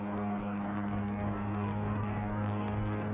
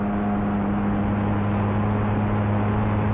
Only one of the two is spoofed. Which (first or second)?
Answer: first